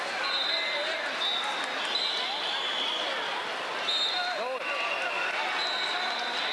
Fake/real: real